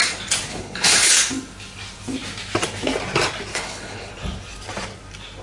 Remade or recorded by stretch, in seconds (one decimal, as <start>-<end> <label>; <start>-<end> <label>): 0.0-0.5 recorded; 0.5-1.1 remade; 1.1-3.5 recorded; 3.5-4.1 remade; 4.1-5.4 recorded